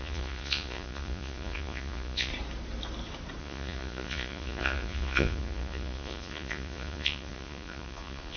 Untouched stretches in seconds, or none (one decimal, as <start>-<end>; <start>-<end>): 2.3-3.4